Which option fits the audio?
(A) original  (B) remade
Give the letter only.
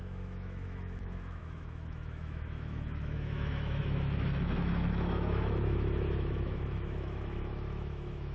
B